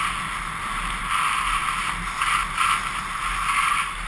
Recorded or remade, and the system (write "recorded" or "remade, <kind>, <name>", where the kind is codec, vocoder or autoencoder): recorded